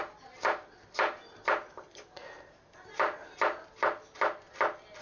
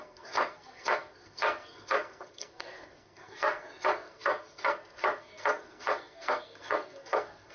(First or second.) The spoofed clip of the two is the second